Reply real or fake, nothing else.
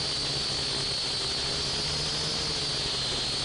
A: real